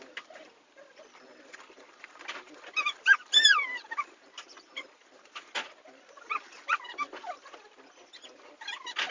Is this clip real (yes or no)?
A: yes